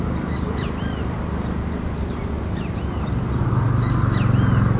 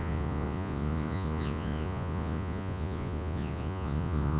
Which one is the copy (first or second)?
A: second